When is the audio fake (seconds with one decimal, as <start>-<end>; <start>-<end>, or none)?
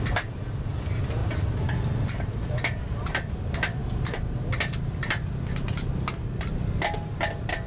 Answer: 1.2-2.6; 3.8-4.5